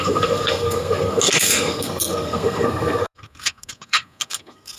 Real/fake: fake